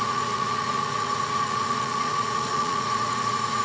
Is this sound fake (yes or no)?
yes